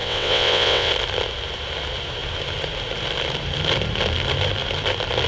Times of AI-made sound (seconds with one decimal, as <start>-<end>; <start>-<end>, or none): 0.0-0.9